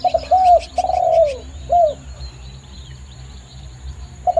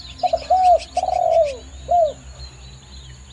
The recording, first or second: second